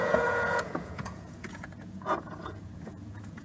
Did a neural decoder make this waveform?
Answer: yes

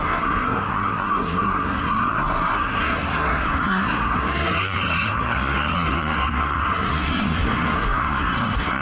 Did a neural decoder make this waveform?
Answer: yes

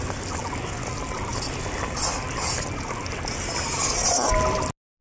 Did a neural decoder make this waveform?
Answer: no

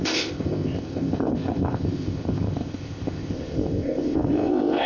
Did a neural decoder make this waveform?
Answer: yes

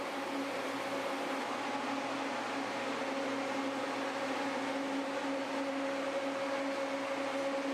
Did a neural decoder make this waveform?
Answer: no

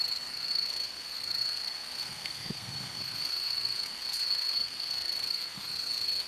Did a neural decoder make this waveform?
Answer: yes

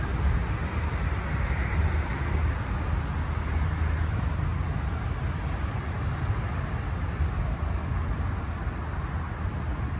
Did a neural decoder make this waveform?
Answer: no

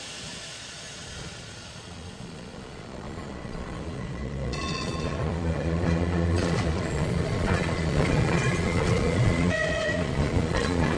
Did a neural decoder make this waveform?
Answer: yes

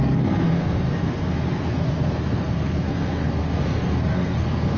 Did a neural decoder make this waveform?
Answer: yes